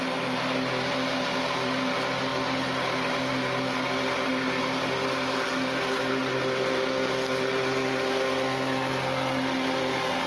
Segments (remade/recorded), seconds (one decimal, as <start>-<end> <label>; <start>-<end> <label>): 0.0-10.3 recorded